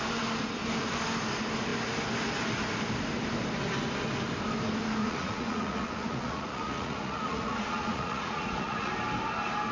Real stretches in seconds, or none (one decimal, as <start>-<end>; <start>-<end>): 0.0-5.0; 8.9-9.7